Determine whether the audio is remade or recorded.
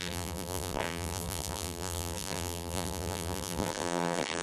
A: remade